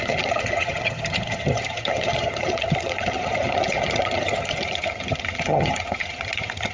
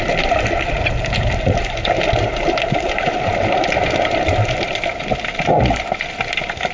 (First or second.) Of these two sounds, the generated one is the first